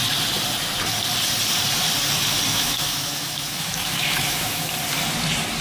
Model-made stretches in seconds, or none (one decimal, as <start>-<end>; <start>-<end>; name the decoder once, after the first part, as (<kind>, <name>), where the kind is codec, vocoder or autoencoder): 2.5-4.7 (autoencoder, DAC-VAE)